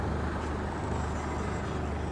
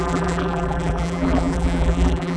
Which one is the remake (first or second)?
second